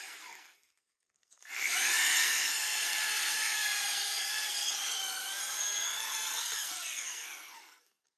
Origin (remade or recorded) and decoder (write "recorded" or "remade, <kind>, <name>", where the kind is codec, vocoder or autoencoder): remade, codec, SNAC